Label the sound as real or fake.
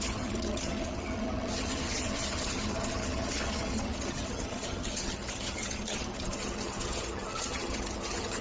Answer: fake